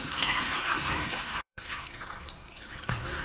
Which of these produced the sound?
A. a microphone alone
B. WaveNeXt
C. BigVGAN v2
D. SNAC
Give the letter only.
D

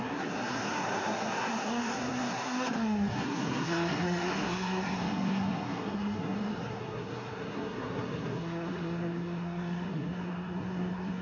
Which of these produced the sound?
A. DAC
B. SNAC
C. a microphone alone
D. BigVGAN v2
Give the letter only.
B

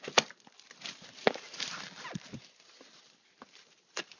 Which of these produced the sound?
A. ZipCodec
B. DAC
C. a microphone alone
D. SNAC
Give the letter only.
C